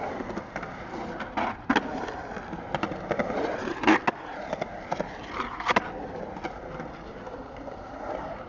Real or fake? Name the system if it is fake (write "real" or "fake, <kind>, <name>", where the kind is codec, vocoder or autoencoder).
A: real